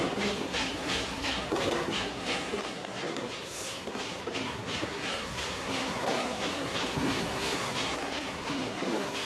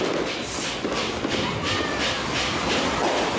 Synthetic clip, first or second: first